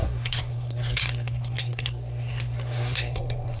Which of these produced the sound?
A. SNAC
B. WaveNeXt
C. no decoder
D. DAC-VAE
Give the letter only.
A